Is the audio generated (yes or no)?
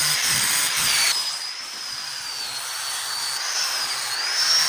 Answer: no